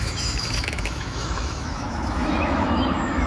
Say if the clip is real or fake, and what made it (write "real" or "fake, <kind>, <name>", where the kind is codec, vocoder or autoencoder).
fake, autoencoder, DAC-VAE